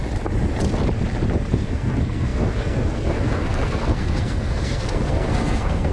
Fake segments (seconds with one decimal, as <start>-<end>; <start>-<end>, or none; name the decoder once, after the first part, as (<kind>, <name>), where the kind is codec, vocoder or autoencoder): 1.5-5.9 (codec, SNAC)